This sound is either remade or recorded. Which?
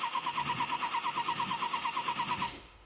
remade